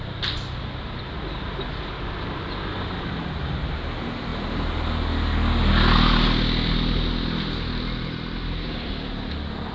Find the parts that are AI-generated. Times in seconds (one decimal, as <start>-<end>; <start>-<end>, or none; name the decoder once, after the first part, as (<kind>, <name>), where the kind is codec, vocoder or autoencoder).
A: none